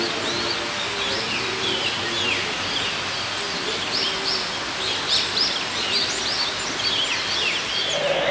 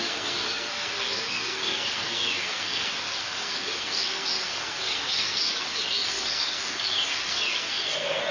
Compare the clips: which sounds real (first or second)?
first